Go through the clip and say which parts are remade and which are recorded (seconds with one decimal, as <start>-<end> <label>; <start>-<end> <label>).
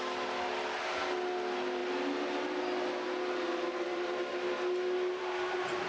0.0-5.9 recorded